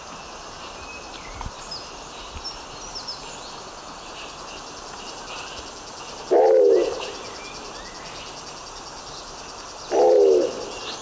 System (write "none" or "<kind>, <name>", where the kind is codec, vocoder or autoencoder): none